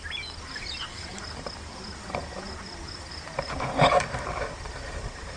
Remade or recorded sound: recorded